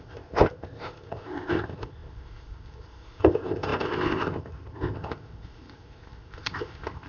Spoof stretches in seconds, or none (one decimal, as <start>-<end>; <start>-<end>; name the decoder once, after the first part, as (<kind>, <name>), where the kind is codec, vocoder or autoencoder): 0.0-7.1 (codec, ZipCodec)